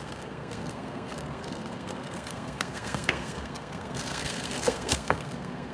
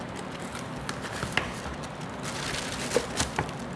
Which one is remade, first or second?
first